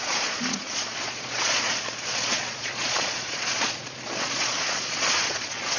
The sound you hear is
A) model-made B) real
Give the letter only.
A